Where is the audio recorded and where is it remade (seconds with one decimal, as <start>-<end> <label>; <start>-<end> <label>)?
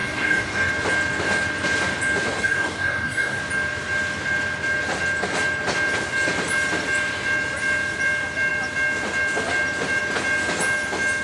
0.0-0.7 remade; 0.7-2.4 recorded; 2.4-3.4 remade; 3.4-11.2 recorded